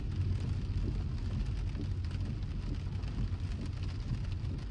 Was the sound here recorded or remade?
recorded